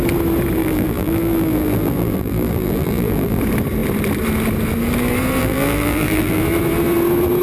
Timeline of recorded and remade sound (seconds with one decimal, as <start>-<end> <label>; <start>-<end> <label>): 0.0-0.6 recorded; 0.6-3.4 remade; 3.4-5.4 recorded; 5.4-6.4 remade; 6.4-7.4 recorded